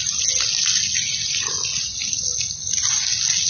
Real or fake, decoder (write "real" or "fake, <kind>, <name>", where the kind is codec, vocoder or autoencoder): real